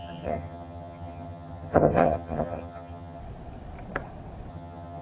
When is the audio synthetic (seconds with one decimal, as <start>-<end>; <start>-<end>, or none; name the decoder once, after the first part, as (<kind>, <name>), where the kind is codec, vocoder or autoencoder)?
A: 0.0-3.2 (vocoder, HiFi-GAN); 4.5-5.0